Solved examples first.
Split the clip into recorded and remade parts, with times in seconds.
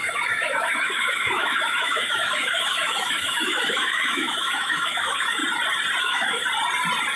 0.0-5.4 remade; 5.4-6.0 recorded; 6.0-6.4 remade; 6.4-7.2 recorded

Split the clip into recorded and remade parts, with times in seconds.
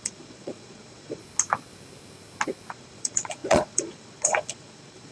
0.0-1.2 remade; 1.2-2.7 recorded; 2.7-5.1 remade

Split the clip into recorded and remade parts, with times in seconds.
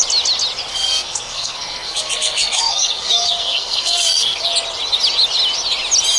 0.0-0.7 recorded; 0.7-4.4 remade; 4.4-6.2 recorded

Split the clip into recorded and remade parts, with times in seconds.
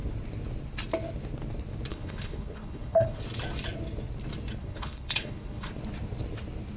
0.0-1.9 recorded; 1.9-3.2 remade; 3.2-4.6 recorded; 4.6-5.7 remade; 5.7-6.8 recorded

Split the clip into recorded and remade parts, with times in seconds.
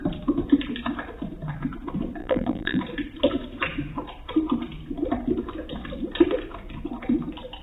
0.0-2.2 recorded; 2.2-2.8 remade; 2.8-7.6 recorded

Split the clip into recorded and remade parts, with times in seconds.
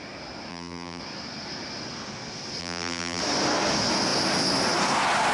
0.0-0.5 recorded; 0.5-1.0 remade; 1.0-2.6 recorded; 2.6-3.2 remade; 3.2-5.3 recorded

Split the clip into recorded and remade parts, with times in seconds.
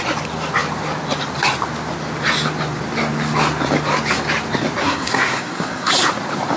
0.0-4.8 recorded; 4.8-5.9 remade; 5.9-6.6 recorded